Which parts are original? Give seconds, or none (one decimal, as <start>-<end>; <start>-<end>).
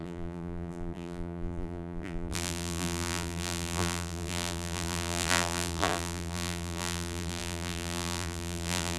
none